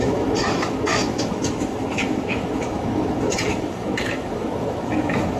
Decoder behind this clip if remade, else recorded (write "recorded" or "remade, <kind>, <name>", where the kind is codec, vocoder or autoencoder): remade, autoencoder, DAC-VAE